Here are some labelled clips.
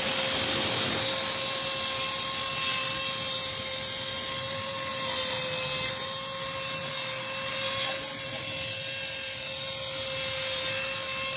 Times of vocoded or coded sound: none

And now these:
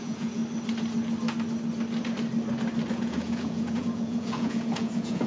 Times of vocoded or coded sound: 0.0-0.4 (vocoder, Vocos); 2.9-5.3

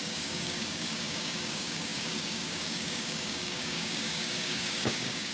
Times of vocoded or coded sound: 0.0-5.3 (codec, DAC)

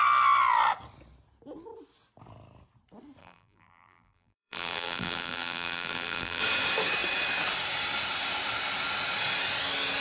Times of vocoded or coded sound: 3.2-6.4 (vocoder, BigVGAN v2)

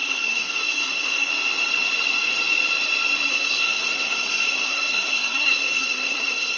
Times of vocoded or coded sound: 0.0-1.3 (codec, SNAC); 3.3-6.6

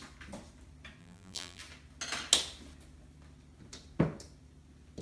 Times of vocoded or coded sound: 1.0-1.6 (vocoder, BigVGAN v2)